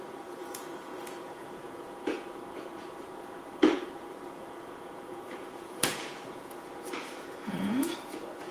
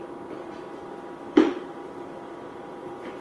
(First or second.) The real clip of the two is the second